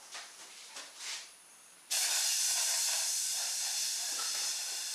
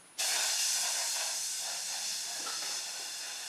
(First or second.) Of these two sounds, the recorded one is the second